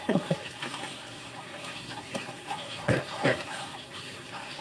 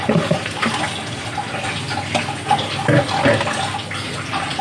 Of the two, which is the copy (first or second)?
first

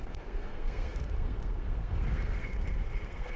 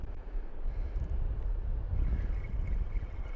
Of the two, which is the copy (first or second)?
first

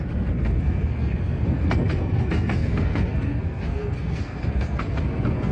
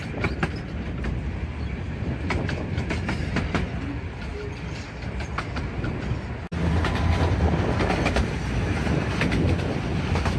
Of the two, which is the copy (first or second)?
first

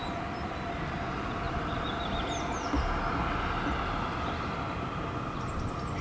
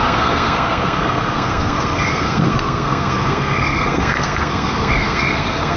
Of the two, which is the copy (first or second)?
second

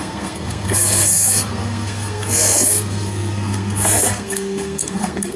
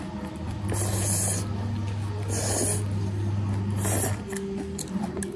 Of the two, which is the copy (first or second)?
first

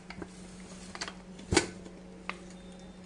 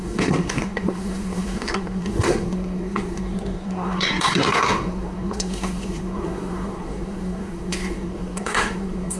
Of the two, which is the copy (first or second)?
second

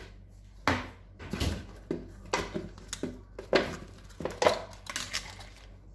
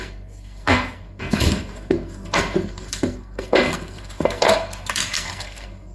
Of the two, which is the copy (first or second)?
second